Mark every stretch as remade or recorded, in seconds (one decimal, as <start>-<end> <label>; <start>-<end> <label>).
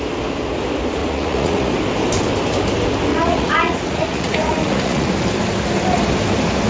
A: 0.0-1.0 recorded; 1.0-1.7 remade; 1.7-3.1 recorded; 3.1-5.1 remade; 5.1-6.7 recorded